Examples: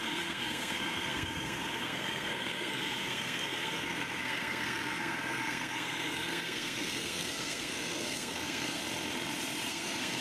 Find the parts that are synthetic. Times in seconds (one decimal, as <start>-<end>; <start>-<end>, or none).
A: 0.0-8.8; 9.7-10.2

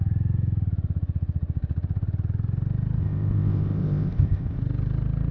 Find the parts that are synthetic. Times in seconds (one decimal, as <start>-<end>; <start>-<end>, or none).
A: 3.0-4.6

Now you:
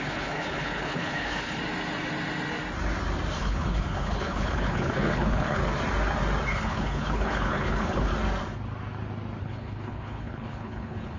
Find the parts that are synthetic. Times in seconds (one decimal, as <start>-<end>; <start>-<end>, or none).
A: 0.0-1.6; 3.4-5.6; 6.5-8.1; 9.4-11.2